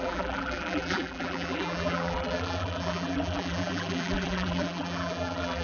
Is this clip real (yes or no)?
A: no